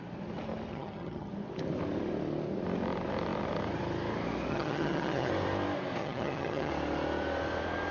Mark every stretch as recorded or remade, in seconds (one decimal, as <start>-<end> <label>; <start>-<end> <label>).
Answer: 0.0-0.7 recorded; 0.7-1.3 remade; 1.3-4.5 recorded; 4.5-5.3 remade; 5.3-6.0 recorded; 6.0-6.7 remade; 6.7-7.9 recorded